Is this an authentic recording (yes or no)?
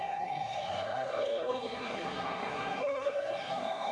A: no